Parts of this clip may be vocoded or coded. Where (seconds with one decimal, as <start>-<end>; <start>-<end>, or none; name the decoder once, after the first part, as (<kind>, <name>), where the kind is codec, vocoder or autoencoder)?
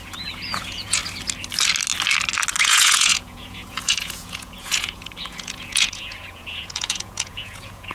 0.0-1.0 (vocoder, Vocos); 2.6-7.9